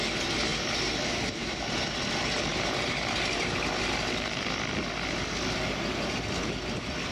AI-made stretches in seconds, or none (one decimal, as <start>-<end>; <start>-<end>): 2.5-3.6